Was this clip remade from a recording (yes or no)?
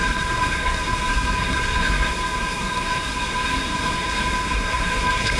yes